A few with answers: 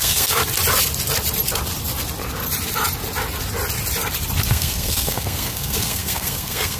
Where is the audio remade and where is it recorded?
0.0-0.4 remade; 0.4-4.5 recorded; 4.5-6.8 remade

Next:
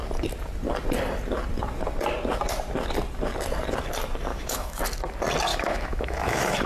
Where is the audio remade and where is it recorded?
0.0-4.3 recorded; 4.3-4.8 remade; 4.8-5.5 recorded; 5.5-6.7 remade

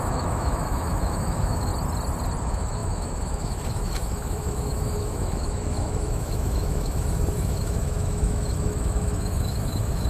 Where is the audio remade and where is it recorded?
0.0-1.7 remade; 1.7-2.4 recorded; 2.4-10.1 remade

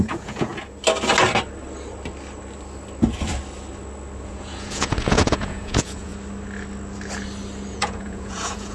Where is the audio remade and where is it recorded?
0.0-0.5 remade; 0.5-4.2 recorded; 4.2-6.1 remade; 6.1-7.7 recorded; 7.7-8.7 remade

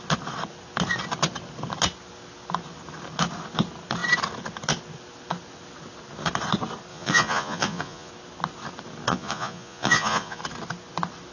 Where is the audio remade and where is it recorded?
0.0-6.9 recorded; 6.9-8.1 remade; 8.1-9.1 recorded; 9.1-10.4 remade; 10.4-11.3 recorded

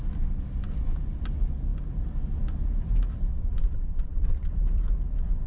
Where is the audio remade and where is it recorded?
0.0-3.3 recorded; 3.3-4.5 remade; 4.5-5.5 recorded

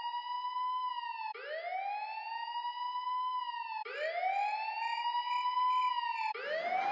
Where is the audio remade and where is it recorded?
0.0-6.9 recorded

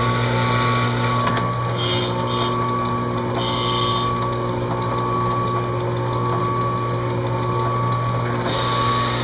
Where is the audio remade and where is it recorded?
0.0-9.2 recorded